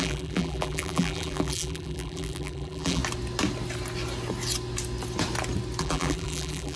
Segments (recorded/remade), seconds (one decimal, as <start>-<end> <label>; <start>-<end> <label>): 0.0-3.0 remade; 3.0-5.8 recorded; 5.8-6.8 remade